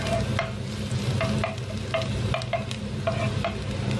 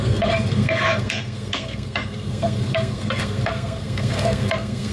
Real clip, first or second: first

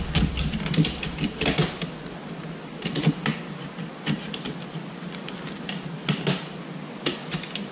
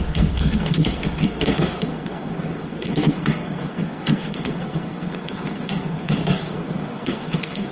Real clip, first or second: first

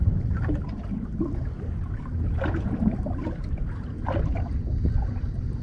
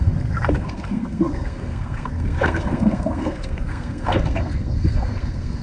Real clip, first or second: first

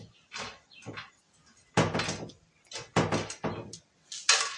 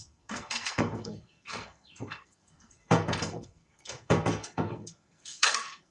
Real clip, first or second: first